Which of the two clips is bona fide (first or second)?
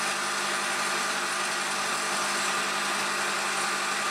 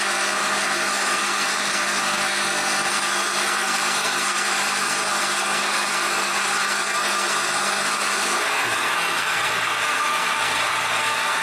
first